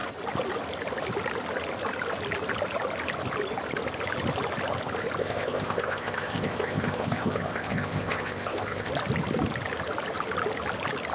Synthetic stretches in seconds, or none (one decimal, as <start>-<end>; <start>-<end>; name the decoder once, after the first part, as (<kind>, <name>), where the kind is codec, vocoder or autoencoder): 5.2-8.9 (codec, ZipCodec)